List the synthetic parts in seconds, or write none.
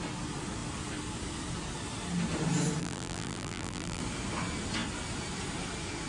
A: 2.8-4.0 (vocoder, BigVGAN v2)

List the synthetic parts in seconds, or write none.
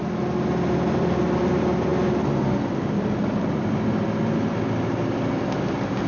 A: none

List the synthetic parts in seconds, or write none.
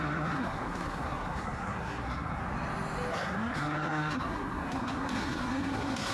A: 0.0-2.4 (codec, SNAC); 3.1-6.1